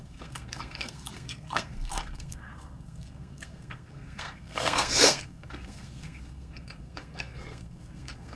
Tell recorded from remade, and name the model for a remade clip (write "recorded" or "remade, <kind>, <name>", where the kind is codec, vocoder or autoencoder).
remade, codec, SNAC